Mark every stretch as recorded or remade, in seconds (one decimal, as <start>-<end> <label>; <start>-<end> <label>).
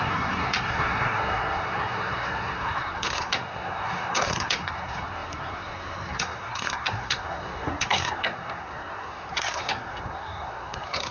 0.0-11.1 remade